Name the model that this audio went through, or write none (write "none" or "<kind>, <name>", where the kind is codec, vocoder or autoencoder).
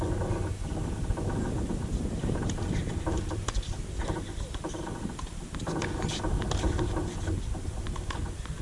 none